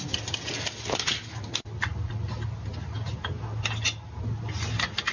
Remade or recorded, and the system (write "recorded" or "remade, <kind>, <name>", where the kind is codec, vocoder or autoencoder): recorded